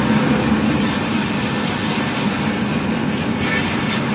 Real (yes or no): yes